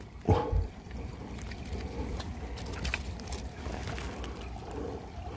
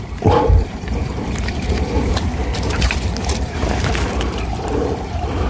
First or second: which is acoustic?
first